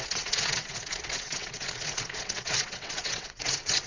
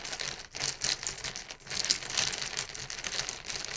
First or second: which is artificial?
first